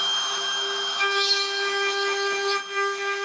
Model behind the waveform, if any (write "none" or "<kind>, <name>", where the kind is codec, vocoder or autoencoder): autoencoder, DAC-VAE